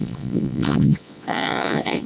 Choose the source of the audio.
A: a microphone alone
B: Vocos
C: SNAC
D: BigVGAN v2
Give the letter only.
B